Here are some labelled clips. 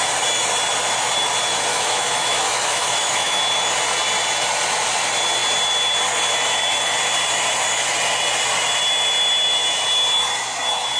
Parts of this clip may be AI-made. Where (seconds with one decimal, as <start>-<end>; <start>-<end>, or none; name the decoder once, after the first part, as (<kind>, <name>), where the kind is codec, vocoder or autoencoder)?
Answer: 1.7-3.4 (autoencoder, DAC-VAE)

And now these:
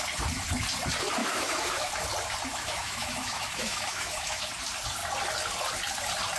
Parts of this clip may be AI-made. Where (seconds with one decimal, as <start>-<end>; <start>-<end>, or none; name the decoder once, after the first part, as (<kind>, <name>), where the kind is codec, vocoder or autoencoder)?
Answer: 1.2-1.9 (autoencoder, DAC-VAE); 2.5-4.5

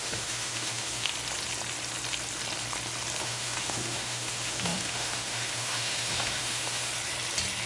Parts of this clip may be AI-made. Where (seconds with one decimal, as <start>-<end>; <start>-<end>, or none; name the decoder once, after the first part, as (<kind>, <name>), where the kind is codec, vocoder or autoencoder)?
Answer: 0.0-1.1 (autoencoder, DAC-VAE); 3.2-6.9

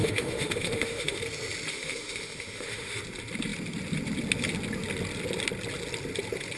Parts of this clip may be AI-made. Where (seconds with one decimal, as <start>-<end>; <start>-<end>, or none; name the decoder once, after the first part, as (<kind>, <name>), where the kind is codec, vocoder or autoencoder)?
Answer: 0.0-1.2 (autoencoder, DAC-VAE); 1.7-3.0

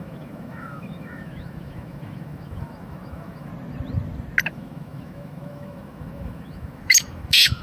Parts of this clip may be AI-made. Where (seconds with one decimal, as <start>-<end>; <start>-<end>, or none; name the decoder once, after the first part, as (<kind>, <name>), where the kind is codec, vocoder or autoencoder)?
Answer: 0.0-3.5 (autoencoder, DAC-VAE); 4.4-7.6